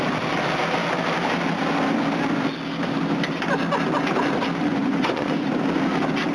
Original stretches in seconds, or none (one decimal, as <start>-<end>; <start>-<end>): 0.0-4.6; 5.4-6.3